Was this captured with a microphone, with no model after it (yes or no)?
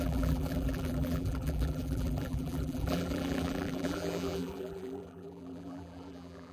no